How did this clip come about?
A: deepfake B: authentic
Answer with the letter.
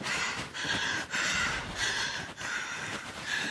A